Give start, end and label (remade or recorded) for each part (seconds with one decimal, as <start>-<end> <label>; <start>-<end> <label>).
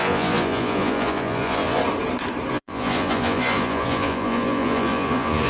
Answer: 0.0-1.8 remade; 1.8-2.5 recorded; 2.5-5.5 remade